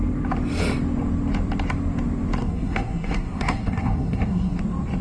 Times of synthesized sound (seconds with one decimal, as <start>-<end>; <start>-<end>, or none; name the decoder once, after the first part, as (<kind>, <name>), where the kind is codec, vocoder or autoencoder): 2.4-4.6 (codec, SNAC)